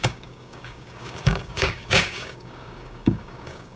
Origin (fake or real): fake